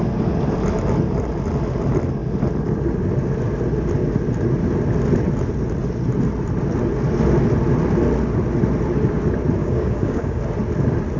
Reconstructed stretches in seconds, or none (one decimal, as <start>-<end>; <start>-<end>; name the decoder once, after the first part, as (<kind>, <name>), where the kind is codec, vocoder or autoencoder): 9.6-10.4 (codec, DAC)